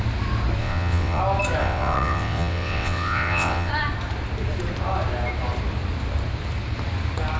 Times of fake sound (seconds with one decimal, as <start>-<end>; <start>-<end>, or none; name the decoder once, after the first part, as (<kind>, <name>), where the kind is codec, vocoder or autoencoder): 0.6-1.2 (vocoder, WaveNeXt); 1.6-3.7

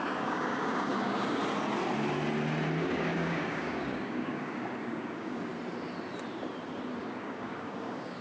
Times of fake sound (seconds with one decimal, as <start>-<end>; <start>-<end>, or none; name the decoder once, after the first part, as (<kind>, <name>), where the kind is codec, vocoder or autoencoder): 0.0-1.4 (codec, DAC); 2.8-5.5; 7.0-8.2

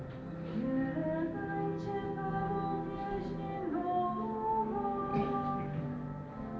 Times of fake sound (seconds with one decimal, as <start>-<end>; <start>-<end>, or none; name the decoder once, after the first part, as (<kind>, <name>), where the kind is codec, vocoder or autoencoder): none

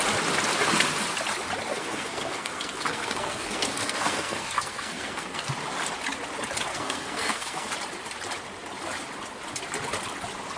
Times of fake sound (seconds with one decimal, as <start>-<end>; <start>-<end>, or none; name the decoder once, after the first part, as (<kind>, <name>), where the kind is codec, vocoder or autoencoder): 1.7-5.5 (codec, SNAC); 6.7-7.7